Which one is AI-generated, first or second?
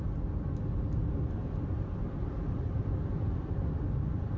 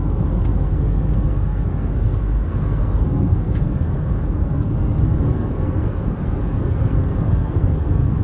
second